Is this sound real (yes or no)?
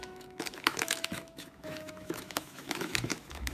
no